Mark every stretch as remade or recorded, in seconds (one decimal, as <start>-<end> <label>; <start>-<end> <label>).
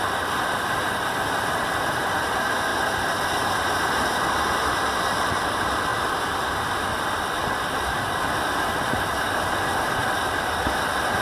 0.0-5.9 recorded; 5.9-8.2 remade; 8.2-10.0 recorded; 10.0-10.6 remade; 10.6-11.2 recorded